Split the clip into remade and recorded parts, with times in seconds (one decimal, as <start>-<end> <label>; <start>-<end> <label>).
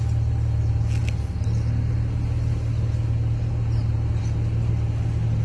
0.0-5.4 recorded